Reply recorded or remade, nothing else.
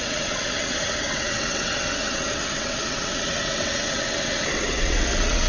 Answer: remade